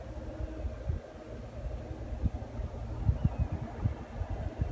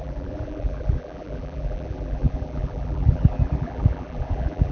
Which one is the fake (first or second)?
second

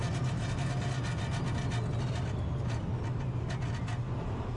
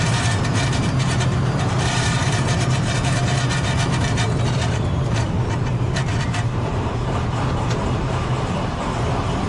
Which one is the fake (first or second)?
second